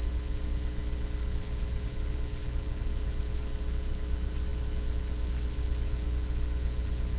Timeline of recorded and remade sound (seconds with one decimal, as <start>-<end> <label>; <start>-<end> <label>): 0.0-7.2 recorded